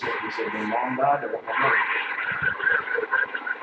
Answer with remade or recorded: recorded